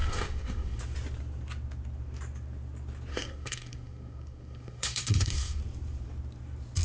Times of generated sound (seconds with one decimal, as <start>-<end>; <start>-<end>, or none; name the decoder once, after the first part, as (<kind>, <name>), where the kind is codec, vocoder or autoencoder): 0.0-0.8 (codec, SNAC); 3.1-5.6